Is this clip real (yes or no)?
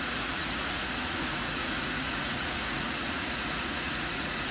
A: no